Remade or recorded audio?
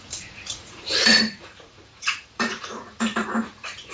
remade